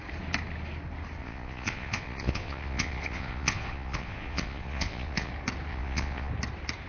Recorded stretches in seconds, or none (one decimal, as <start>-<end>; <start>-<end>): 0.0-1.2; 5.3-5.7; 6.3-6.9

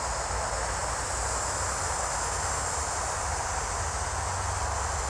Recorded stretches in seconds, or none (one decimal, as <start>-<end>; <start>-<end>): 0.0-5.1